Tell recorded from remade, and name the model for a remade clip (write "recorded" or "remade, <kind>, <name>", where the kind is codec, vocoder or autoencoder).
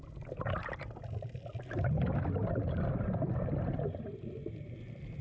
recorded